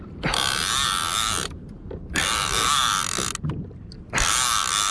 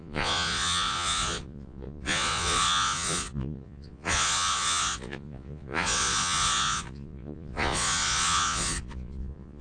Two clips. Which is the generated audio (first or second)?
second